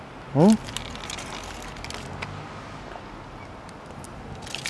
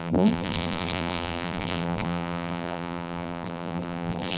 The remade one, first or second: second